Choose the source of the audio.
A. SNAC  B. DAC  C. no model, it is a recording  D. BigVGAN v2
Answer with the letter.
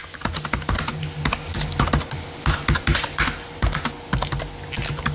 C